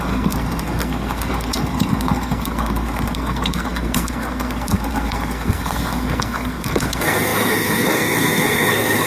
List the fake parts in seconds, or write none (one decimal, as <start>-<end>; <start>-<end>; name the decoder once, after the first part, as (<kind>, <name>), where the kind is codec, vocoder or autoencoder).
0.0-9.1 (codec, SNAC)